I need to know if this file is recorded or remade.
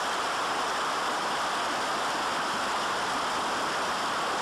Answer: recorded